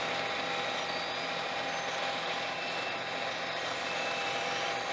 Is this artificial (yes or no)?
no